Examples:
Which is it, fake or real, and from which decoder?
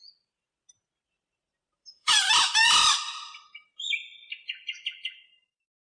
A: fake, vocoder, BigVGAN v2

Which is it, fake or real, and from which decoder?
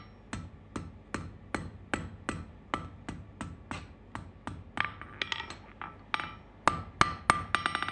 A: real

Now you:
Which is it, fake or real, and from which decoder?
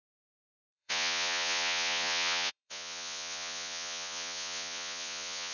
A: fake, vocoder, Vocos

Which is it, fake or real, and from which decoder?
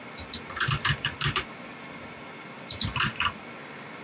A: real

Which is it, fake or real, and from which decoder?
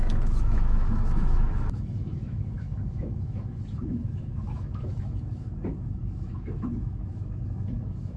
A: fake, autoencoder, DAC-VAE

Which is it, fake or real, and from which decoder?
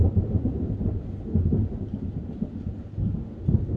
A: real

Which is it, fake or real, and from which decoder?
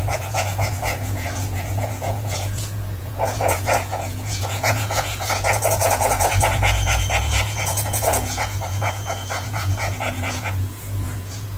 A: fake, vocoder, Vocos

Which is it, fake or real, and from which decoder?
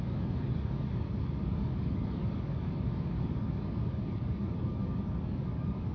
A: fake, codec, DAC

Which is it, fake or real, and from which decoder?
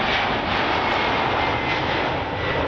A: real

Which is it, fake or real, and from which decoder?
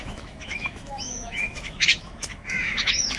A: fake, autoencoder, DAC-VAE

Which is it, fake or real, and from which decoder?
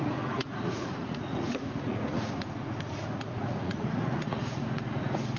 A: fake, vocoder, Vocos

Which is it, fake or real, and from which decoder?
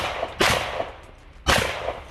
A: real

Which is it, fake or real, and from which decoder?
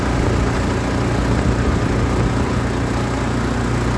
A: real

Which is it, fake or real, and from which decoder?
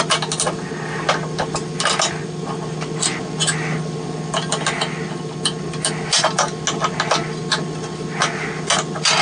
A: real